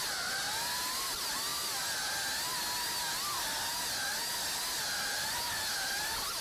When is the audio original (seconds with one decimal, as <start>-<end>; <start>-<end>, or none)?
0.0-6.4